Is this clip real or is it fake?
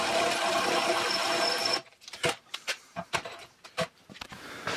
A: fake